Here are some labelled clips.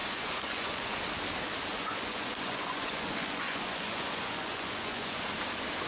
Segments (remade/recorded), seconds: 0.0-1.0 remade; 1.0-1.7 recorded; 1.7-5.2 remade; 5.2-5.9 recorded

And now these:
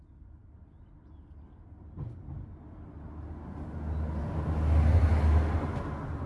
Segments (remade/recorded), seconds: 0.0-6.3 recorded

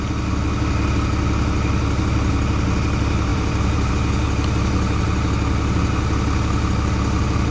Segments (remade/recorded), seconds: 0.0-3.3 recorded; 3.3-3.9 remade; 3.9-7.5 recorded